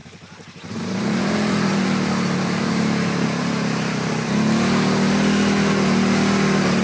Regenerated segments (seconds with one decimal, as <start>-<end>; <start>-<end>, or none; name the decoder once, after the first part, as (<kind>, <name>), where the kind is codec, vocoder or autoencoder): 0.0-4.1 (vocoder, BigVGAN v2)